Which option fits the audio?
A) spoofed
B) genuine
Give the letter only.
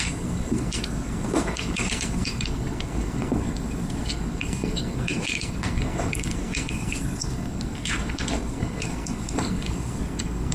A